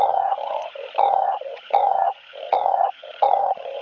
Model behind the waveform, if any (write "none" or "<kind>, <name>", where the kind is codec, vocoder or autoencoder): vocoder, HiFi-GAN